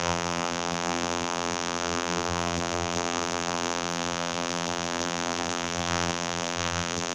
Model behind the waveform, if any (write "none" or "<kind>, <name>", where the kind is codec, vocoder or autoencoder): vocoder, BigVGAN v2